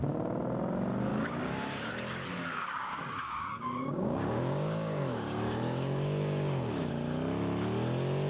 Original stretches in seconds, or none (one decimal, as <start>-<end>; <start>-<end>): 0.0-1.1; 1.9-2.3; 6.9-8.3